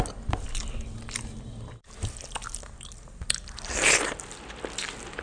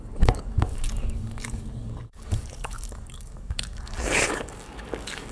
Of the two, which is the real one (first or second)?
first